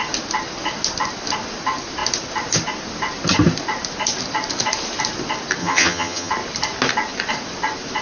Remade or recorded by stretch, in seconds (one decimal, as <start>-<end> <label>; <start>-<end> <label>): 0.0-5.6 recorded; 5.6-6.3 remade; 6.3-8.0 recorded